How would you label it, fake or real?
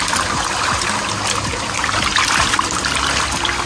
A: real